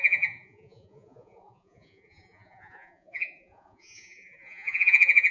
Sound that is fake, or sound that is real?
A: fake